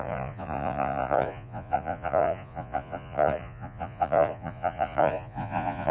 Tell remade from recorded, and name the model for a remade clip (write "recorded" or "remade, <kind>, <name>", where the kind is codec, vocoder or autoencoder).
remade, vocoder, Vocos